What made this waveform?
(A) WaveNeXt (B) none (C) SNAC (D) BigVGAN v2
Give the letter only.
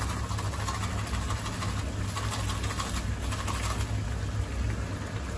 B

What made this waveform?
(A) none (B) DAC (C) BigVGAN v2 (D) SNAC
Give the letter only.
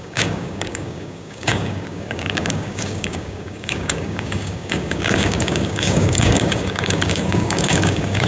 B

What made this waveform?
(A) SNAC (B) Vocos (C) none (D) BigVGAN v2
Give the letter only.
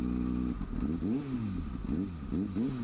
C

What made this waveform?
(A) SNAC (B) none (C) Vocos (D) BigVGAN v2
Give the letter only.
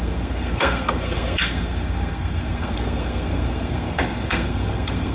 A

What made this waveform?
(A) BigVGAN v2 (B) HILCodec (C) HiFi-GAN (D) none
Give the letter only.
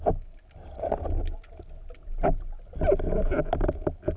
D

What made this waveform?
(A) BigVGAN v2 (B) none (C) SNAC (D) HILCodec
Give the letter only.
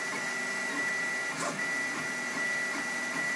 B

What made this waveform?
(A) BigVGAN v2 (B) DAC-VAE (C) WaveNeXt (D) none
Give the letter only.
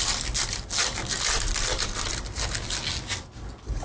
D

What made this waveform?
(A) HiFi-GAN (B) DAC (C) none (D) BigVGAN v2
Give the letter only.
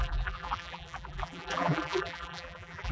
D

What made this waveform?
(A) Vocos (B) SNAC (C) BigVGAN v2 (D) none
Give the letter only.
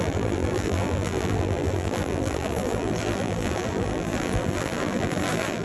C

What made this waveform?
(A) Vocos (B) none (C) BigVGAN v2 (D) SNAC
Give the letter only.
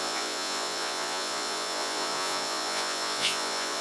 A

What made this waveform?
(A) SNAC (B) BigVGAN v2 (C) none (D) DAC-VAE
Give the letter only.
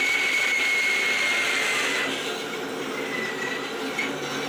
B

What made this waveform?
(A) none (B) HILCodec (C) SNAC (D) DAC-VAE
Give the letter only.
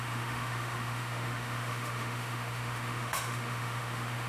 D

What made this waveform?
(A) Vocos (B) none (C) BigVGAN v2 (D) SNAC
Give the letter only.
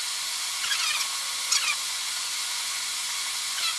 A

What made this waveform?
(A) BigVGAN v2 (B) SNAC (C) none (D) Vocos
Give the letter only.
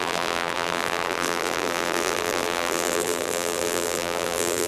A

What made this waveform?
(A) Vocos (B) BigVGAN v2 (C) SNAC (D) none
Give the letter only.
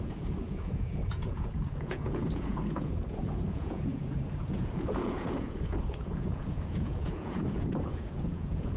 A